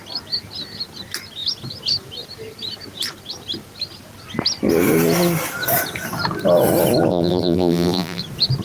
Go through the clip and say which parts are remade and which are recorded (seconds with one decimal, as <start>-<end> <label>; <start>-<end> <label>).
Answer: 0.0-7.1 recorded; 7.1-8.2 remade; 8.2-8.6 recorded